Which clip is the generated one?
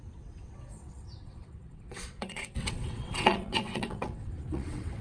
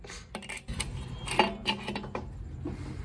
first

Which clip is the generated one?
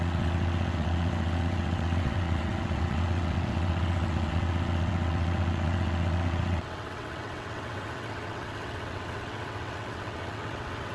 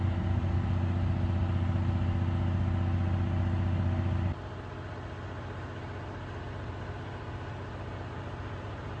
first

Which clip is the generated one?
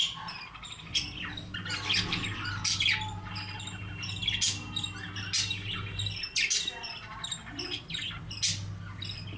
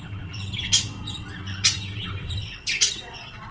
second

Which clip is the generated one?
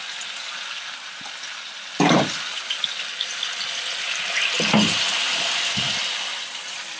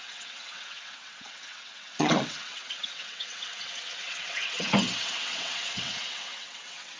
second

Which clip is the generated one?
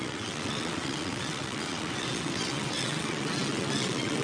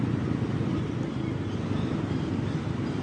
first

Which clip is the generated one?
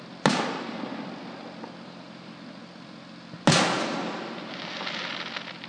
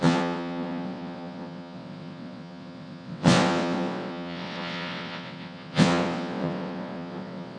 second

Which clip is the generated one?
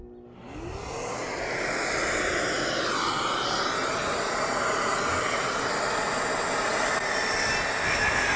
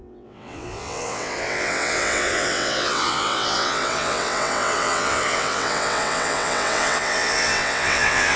second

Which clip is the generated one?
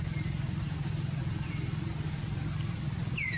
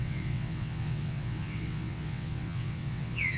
second